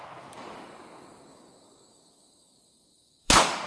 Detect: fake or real fake